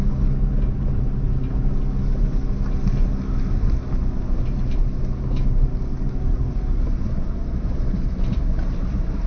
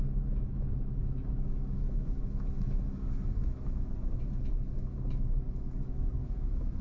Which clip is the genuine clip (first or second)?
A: first